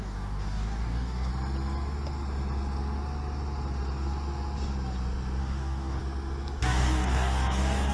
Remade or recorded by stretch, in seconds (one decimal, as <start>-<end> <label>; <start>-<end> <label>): 0.0-1.3 remade; 1.3-5.4 recorded; 5.4-6.0 remade; 6.0-6.6 recorded; 6.6-7.9 remade